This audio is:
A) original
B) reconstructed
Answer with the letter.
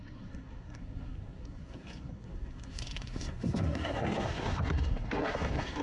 B